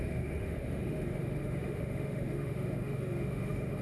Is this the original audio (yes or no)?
no